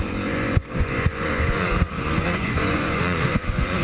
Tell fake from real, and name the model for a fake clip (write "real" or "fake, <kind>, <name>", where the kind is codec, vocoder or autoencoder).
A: fake, vocoder, Vocos